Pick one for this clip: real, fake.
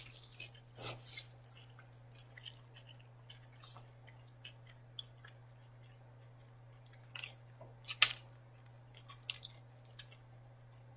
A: real